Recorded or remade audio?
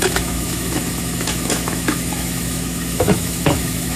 remade